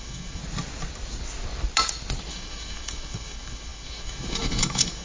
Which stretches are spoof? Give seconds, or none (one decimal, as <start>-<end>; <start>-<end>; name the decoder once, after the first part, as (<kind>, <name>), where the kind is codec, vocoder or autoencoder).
0.0-0.4 (autoencoder, DAC-VAE); 2.3-5.0